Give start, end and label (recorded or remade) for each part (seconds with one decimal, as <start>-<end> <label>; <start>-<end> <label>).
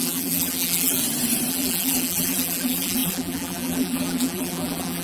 0.0-1.0 remade; 1.0-1.5 recorded; 1.5-5.0 remade